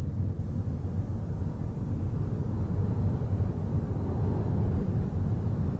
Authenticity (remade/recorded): recorded